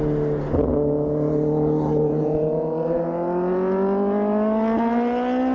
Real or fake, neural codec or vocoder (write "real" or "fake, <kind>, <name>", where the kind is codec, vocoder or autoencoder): real